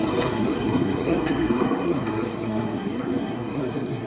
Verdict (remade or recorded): remade